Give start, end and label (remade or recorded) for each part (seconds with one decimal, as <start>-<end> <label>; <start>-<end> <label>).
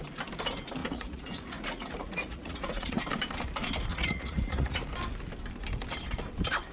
0.0-0.8 recorded; 0.8-3.0 remade; 3.0-3.9 recorded; 3.9-4.8 remade; 4.8-6.7 recorded